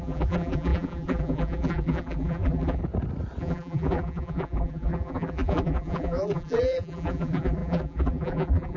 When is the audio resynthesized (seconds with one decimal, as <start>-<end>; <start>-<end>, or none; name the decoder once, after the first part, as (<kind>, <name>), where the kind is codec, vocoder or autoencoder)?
0.0-2.8 (vocoder, BigVGAN v2); 3.4-8.8